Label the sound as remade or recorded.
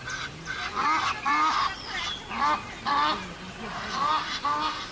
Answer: recorded